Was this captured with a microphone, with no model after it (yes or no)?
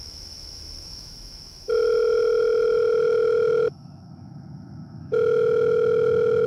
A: no